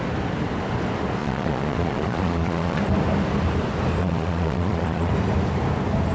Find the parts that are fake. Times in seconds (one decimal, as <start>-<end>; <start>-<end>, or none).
1.2-2.8; 4.0-5.1